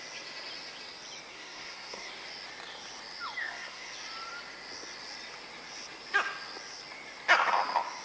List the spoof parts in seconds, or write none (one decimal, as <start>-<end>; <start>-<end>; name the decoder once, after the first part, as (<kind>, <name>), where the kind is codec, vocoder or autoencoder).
1.3-2.1 (codec, SNAC); 3.4-3.9